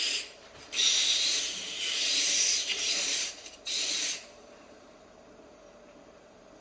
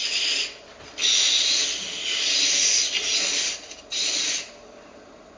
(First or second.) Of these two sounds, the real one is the second